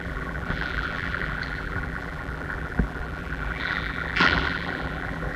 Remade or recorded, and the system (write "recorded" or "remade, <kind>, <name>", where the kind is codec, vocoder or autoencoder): remade, vocoder, BigVGAN v2